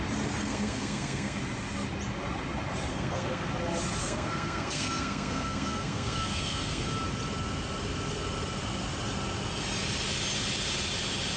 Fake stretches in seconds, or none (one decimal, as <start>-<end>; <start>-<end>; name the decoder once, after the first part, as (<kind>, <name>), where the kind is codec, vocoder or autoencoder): 0.4-1.4 (codec, SNAC); 2.9-3.5; 4.0-6.9